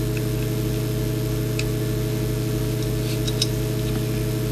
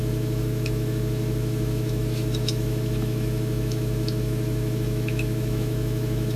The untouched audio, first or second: first